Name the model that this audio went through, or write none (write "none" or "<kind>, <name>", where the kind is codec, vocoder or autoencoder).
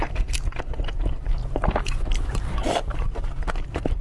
vocoder, BigVGAN v2